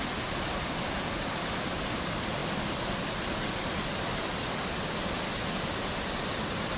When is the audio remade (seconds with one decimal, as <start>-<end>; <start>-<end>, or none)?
2.4-4.3